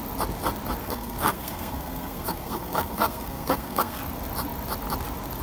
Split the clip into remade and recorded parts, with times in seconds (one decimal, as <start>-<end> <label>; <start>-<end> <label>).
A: 0.0-0.8 recorded; 0.8-4.0 remade; 4.0-5.4 recorded